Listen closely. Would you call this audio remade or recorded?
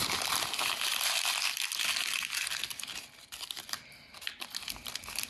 recorded